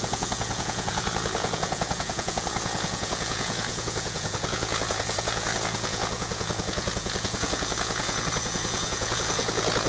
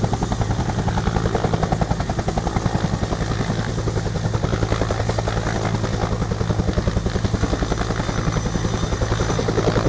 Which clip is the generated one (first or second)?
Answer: first